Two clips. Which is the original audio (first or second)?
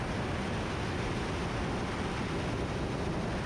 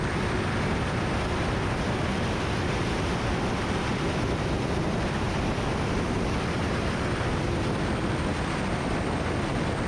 first